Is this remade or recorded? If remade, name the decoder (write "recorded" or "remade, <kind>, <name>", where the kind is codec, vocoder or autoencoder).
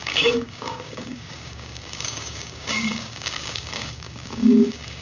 remade, codec, DAC